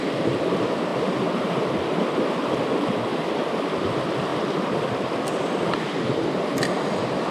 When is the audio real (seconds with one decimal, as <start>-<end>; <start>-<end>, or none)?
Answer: 0.0-4.3; 6.2-7.3